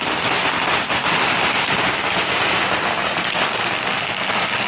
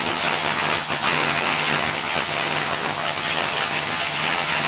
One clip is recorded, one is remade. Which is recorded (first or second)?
first